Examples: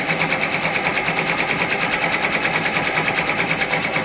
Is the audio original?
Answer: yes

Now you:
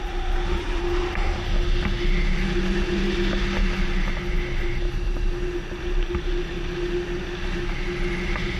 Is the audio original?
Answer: yes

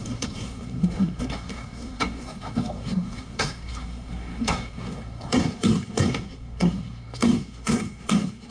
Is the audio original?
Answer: no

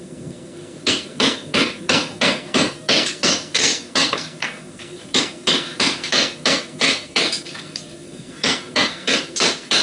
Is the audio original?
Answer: no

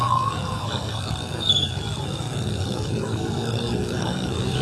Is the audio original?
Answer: no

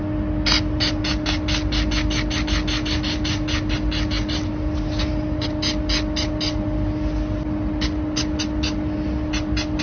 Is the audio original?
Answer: yes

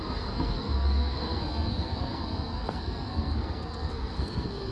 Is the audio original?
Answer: no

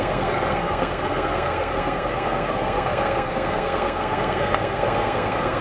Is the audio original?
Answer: no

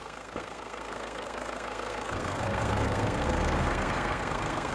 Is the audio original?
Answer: no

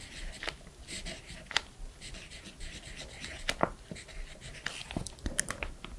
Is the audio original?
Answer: yes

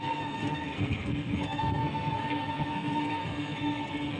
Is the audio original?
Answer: no